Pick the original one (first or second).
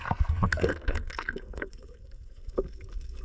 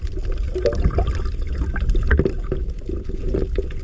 second